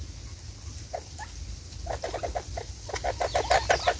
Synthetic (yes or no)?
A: no